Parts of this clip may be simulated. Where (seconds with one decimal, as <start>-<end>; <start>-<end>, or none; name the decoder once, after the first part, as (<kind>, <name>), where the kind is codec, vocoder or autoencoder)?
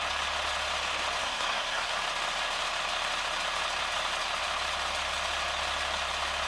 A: 1.2-1.9 (codec, SNAC)